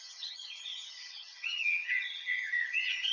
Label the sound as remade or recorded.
remade